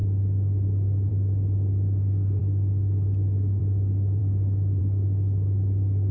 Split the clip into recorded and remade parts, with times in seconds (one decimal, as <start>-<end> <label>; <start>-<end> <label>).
0.0-6.1 recorded